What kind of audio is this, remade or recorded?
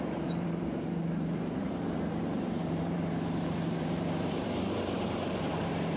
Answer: remade